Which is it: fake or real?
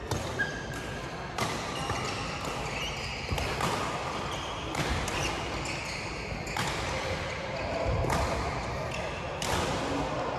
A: real